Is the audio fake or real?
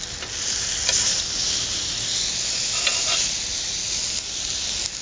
real